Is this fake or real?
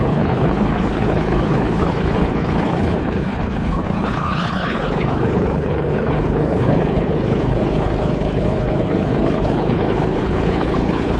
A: fake